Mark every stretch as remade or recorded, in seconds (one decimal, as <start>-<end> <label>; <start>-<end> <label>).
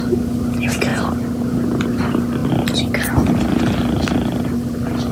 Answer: 0.0-5.1 recorded